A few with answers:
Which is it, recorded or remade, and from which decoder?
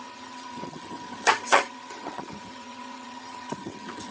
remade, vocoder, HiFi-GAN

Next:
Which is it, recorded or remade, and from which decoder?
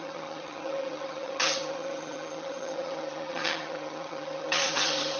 remade, vocoder, HiFi-GAN